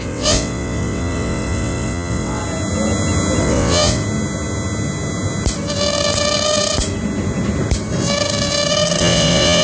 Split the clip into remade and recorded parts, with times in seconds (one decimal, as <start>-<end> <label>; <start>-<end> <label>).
0.0-2.4 remade; 2.4-3.4 recorded; 3.4-4.0 remade; 4.0-9.0 recorded; 9.0-9.6 remade